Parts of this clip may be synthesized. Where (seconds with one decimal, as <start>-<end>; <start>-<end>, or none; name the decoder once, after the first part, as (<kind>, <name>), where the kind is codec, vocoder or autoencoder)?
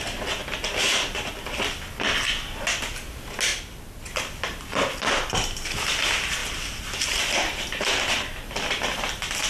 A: 0.4-1.3 (vocoder, BigVGAN v2); 6.4-9.5